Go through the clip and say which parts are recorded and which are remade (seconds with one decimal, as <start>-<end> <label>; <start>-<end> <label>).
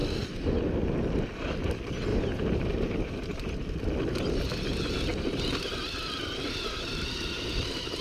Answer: 0.0-2.1 recorded; 2.1-3.5 remade; 3.5-5.1 recorded; 5.1-8.0 remade